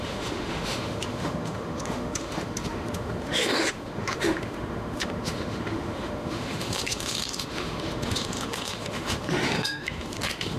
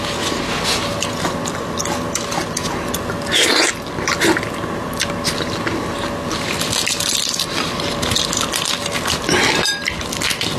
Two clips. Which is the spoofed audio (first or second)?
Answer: first